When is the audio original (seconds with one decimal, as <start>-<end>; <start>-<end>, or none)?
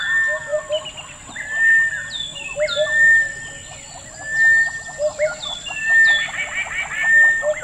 0.0-7.6